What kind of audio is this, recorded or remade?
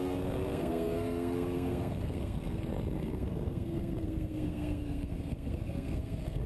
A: remade